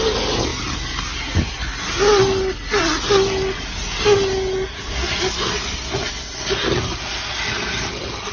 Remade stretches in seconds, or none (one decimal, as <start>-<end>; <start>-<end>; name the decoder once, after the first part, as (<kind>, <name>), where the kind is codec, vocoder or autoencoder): none